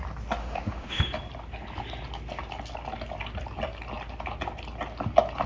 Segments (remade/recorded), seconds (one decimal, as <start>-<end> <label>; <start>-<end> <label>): 0.0-0.4 recorded; 0.4-1.1 remade; 1.1-5.5 recorded